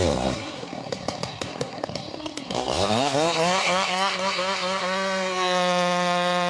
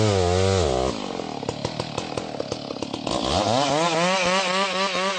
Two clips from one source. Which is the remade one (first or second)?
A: first